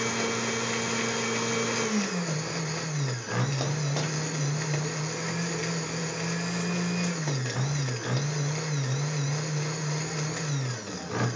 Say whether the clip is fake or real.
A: real